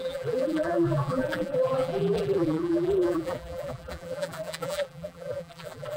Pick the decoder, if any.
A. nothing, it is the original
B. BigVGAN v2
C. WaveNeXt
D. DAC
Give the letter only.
B